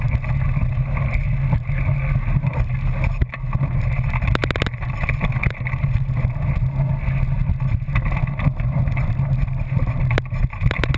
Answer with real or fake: real